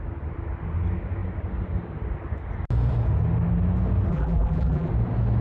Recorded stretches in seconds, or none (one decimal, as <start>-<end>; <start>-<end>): 0.0-4.1; 4.9-5.4